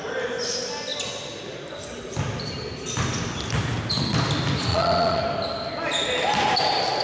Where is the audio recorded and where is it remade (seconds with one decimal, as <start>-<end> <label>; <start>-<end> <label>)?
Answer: 0.0-4.7 recorded; 4.7-5.2 remade; 5.2-7.0 recorded